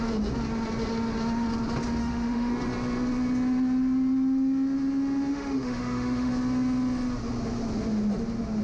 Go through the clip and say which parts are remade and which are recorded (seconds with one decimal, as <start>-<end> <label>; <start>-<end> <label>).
0.0-2.0 recorded; 2.0-2.5 remade; 2.5-5.3 recorded; 5.3-6.3 remade; 6.3-8.6 recorded